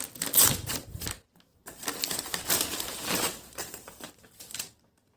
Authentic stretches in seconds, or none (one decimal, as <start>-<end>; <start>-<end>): 0.0-1.5; 4.6-5.2